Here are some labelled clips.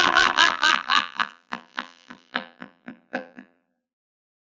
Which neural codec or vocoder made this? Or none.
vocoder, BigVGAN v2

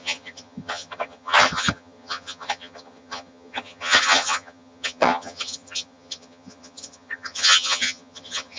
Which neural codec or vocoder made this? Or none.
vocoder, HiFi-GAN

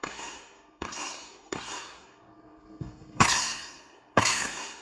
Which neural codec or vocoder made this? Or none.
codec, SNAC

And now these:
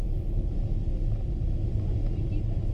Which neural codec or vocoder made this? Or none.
none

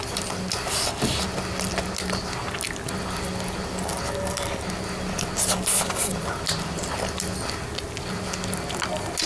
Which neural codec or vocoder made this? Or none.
none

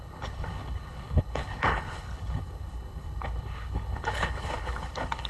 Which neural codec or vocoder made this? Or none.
codec, HILCodec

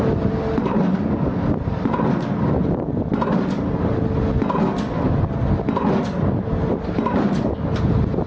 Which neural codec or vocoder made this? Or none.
none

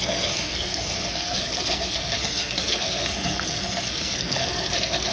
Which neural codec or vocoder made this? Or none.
codec, SNAC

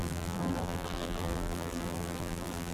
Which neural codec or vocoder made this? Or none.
vocoder, BigVGAN v2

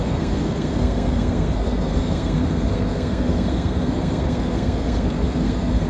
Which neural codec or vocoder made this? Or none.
codec, SNAC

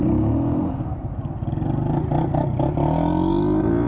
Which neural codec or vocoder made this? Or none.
none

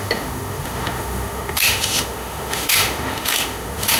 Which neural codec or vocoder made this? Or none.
autoencoder, DAC-VAE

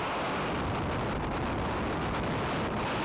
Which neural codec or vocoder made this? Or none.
none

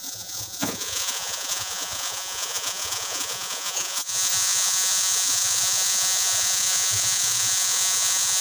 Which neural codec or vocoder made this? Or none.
vocoder, Vocos